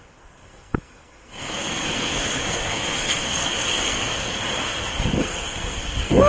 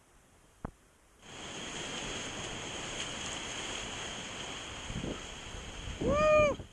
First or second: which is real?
second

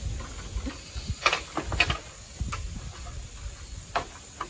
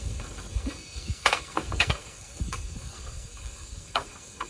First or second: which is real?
first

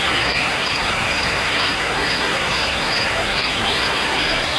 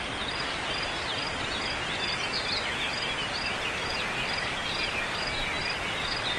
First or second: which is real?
second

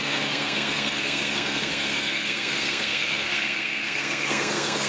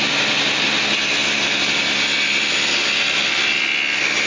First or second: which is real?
second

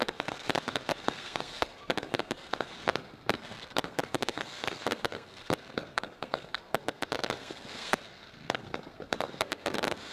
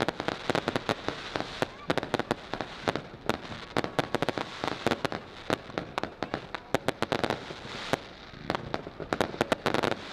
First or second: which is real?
second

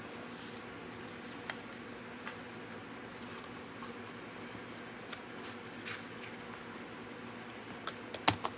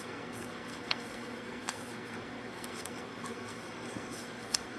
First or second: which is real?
first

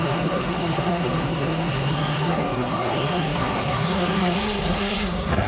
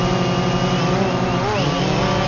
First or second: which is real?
second